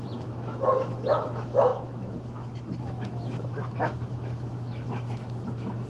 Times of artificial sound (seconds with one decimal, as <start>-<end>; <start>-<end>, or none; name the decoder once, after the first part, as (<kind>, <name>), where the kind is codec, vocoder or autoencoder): 0.0-5.9 (autoencoder, DAC-VAE)